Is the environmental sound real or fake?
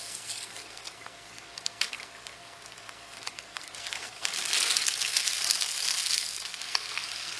fake